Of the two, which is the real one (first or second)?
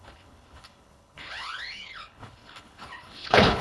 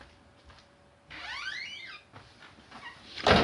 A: second